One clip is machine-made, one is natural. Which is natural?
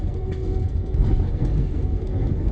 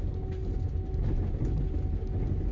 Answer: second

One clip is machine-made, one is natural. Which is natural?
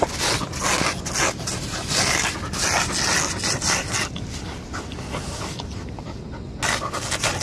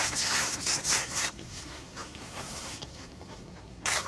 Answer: first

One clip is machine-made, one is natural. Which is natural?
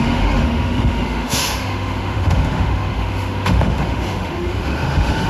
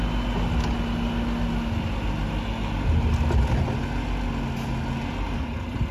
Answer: second